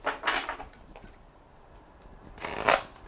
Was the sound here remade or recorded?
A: recorded